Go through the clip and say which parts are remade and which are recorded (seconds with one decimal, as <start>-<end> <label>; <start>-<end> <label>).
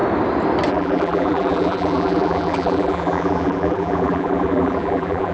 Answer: 0.0-0.7 recorded; 0.7-5.3 remade